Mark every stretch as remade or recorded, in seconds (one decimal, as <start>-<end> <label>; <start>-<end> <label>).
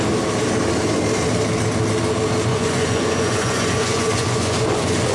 0.0-2.5 recorded; 2.5-5.1 remade